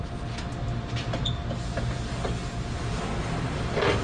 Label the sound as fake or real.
real